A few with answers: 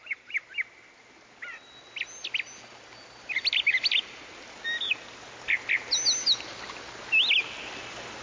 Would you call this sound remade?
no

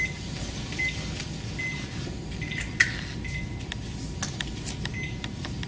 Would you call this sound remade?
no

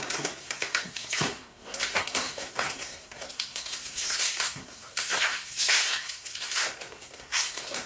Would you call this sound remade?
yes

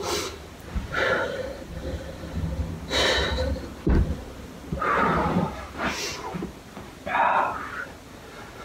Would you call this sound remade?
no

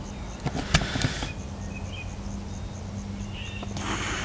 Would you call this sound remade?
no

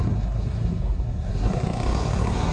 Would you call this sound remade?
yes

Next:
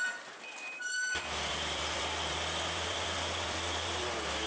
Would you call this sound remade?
yes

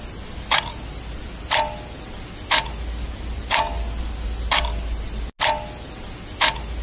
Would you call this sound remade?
no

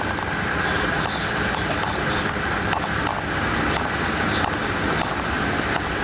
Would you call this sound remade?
no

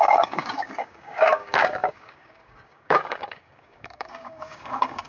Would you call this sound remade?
yes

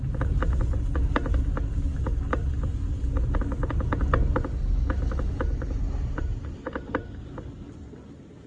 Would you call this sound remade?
no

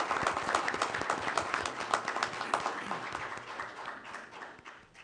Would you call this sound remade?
no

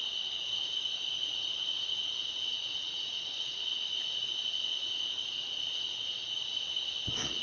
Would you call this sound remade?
yes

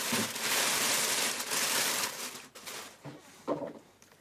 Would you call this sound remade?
yes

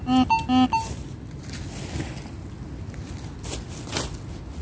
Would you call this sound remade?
no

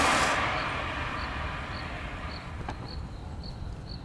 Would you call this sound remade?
yes